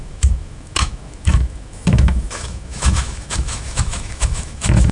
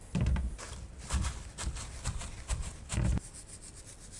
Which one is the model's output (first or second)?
first